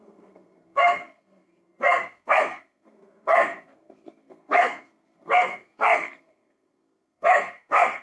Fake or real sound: fake